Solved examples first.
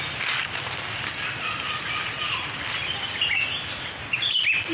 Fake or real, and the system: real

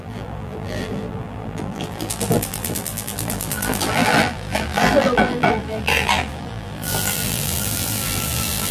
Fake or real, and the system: fake, vocoder, BigVGAN v2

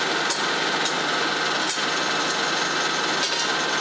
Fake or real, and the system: real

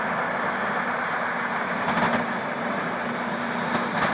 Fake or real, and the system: real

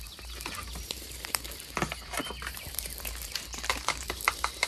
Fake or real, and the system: fake, vocoder, BigVGAN v2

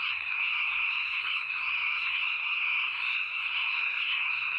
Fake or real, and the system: fake, codec, SNAC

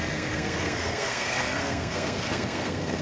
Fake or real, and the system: fake, codec, SNAC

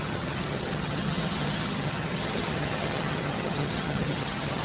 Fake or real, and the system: fake, vocoder, HiFi-GAN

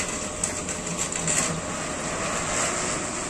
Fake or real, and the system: real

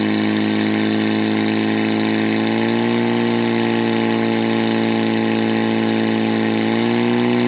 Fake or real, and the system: real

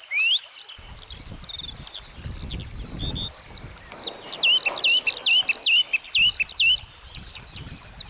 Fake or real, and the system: real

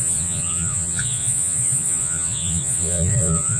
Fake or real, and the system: fake, vocoder, Vocos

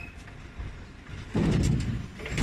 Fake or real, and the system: real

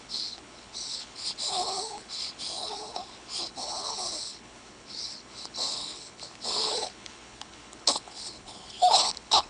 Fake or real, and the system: fake, codec, HILCodec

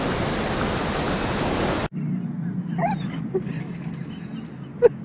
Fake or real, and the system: real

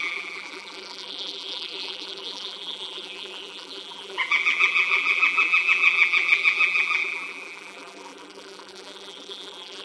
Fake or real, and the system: fake, vocoder, BigVGAN v2